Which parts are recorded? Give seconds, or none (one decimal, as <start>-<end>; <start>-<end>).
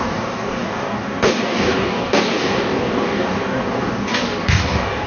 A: none